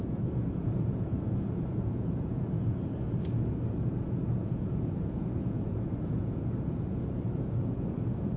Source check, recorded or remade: remade